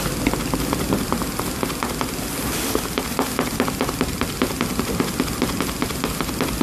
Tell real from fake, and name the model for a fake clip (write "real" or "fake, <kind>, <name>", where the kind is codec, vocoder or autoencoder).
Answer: real